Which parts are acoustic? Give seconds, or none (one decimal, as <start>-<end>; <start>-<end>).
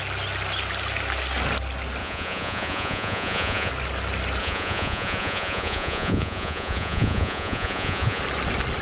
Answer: 0.0-2.0; 3.7-4.4; 8.2-8.8